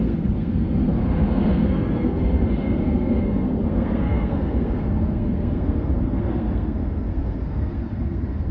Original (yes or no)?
no